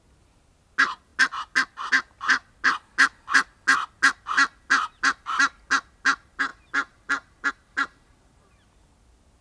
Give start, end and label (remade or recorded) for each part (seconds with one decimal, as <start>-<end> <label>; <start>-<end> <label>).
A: 0.0-9.4 recorded